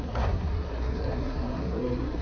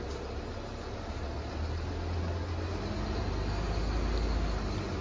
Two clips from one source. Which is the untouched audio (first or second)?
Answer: second